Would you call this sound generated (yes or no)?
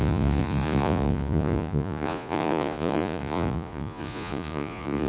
yes